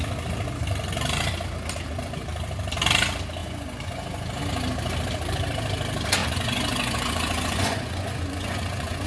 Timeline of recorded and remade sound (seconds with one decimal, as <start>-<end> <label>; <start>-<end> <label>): 0.0-3.4 recorded; 3.4-4.4 remade; 4.4-6.2 recorded; 6.2-9.1 remade